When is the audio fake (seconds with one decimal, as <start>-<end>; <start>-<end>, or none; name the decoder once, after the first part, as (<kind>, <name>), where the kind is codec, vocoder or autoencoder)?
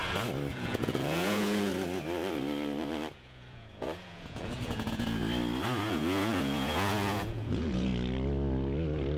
0.5-1.7 (vocoder, Vocos); 3.1-5.2; 5.9-7.9